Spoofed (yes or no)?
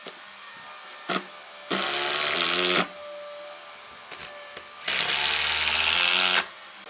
no